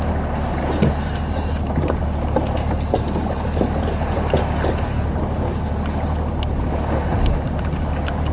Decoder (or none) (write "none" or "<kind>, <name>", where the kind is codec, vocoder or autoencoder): none